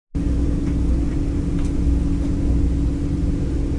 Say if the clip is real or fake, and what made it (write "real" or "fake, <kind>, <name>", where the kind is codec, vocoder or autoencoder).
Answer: real